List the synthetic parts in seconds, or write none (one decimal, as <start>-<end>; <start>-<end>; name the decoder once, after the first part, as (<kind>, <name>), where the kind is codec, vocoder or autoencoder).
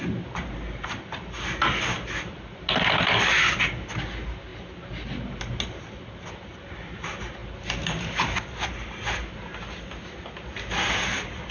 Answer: none